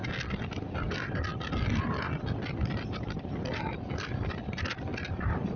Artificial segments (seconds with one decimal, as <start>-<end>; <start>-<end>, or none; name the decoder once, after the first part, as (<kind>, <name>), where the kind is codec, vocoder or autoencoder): none